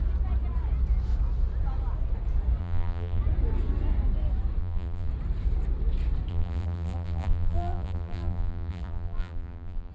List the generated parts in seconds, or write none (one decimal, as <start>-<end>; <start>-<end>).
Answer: 2.6-3.2; 4.6-5.1; 6.3-9.9